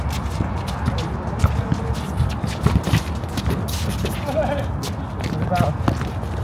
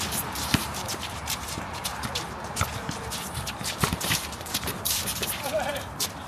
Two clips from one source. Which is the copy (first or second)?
second